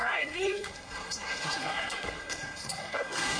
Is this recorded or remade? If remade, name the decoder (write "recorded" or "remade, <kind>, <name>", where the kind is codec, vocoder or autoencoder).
remade, codec, SNAC